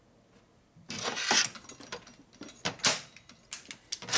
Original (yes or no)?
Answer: yes